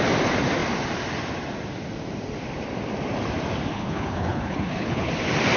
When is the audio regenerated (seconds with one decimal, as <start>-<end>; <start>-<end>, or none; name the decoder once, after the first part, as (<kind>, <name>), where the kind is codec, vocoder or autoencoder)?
3.7-5.1 (codec, HILCodec)

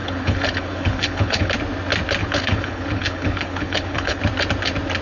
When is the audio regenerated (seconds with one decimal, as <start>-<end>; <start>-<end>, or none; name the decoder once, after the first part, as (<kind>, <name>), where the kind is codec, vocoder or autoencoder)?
0.0-1.5 (codec, HILCodec); 2.2-4.2

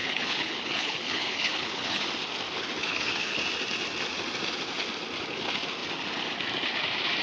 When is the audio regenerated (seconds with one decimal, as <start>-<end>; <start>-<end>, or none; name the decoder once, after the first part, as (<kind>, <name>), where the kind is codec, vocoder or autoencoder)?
0.0-2.0 (codec, HILCodec); 2.8-3.4